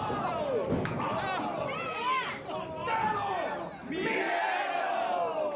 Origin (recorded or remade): recorded